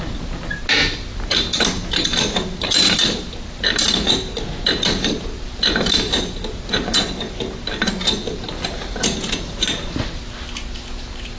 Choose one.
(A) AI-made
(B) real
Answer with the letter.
B